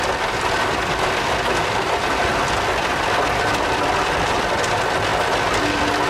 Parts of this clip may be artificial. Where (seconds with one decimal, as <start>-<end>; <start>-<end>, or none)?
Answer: none